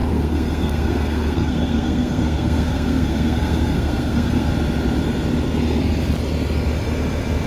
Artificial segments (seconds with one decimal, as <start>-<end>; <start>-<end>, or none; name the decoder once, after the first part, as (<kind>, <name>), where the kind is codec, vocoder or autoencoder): 0.0-4.5 (codec, SNAC)